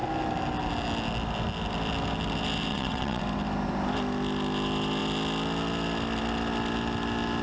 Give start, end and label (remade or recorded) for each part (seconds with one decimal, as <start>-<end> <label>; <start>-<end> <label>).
0.0-2.7 recorded; 2.7-3.2 remade; 3.2-7.4 recorded